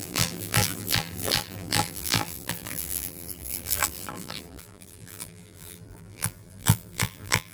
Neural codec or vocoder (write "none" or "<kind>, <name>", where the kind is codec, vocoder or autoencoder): vocoder, BigVGAN v2